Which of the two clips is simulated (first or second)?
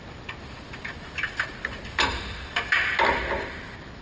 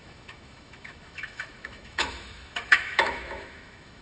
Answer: second